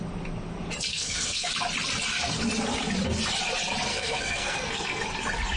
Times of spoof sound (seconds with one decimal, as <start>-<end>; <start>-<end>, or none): 0.9-1.5; 3.9-5.0